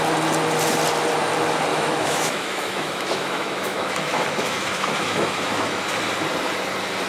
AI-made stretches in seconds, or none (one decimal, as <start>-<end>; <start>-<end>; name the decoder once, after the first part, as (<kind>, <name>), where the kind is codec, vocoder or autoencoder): 1.7-5.8 (autoencoder, DAC-VAE)